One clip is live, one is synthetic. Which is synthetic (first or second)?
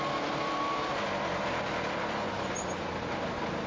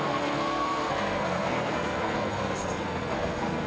second